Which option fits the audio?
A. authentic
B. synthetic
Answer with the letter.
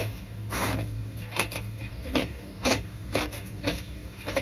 B